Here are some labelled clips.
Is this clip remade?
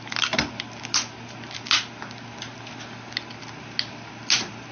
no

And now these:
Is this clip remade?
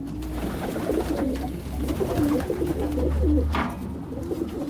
no